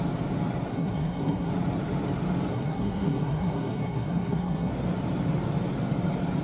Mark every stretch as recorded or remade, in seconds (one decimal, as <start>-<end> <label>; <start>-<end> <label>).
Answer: 0.0-0.7 recorded; 0.7-1.5 remade; 1.5-2.5 recorded; 2.5-4.7 remade; 4.7-6.4 recorded